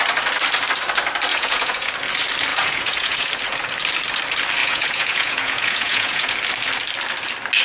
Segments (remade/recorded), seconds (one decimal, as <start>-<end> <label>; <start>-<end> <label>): 0.0-1.3 recorded; 1.3-1.9 remade; 1.9-2.5 recorded; 2.5-3.3 remade; 3.3-4.6 recorded; 4.6-6.3 remade; 6.3-7.6 recorded